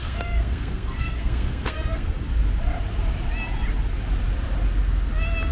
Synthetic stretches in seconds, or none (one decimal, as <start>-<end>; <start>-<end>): 0.0-2.2